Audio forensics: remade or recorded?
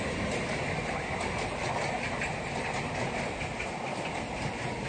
recorded